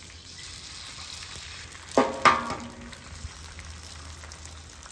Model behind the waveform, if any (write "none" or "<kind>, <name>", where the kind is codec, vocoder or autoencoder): none